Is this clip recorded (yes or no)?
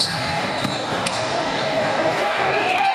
no